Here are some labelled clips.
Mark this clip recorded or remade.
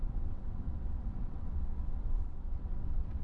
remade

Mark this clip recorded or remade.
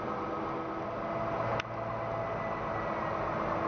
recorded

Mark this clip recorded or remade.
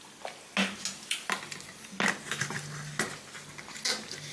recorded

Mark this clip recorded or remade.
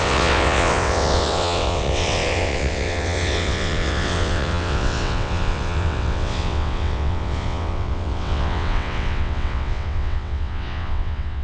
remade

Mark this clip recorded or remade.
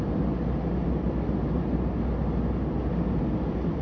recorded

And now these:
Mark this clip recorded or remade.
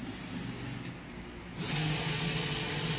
recorded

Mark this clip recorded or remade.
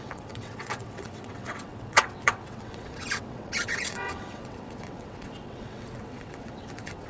remade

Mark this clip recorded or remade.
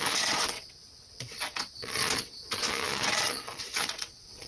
remade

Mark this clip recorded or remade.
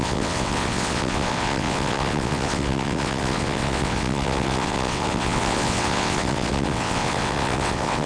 remade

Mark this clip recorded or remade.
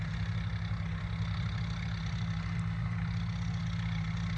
recorded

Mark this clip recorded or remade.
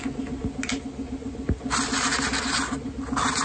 recorded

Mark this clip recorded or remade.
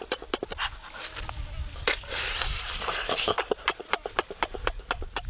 recorded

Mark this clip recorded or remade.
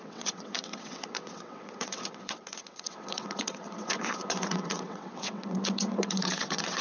remade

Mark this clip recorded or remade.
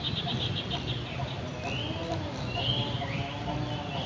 recorded